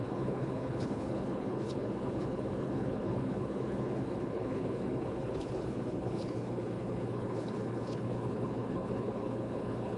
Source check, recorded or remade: remade